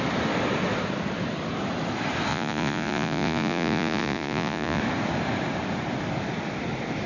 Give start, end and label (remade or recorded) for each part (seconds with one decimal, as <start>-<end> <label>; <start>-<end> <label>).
0.0-2.3 recorded; 2.3-4.8 remade; 4.8-7.1 recorded